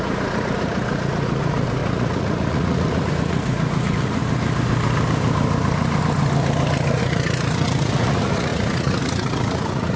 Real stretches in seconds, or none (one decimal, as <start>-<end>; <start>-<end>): 4.2-7.0